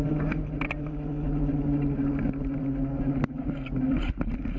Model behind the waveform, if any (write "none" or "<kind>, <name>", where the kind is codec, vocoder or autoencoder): none